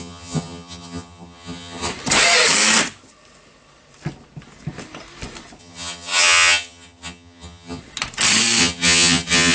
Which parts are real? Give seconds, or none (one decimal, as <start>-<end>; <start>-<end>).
1.9-5.6; 7.8-8.6